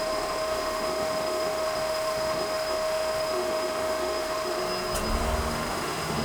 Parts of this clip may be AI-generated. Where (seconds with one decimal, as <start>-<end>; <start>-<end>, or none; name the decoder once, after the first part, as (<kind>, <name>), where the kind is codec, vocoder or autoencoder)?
0.0-4.6 (autoencoder, DAC-VAE); 5.5-6.2